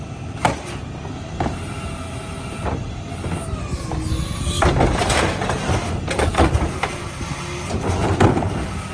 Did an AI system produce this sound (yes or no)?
no